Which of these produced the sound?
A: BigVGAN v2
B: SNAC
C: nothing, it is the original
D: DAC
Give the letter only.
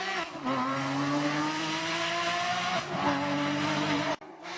C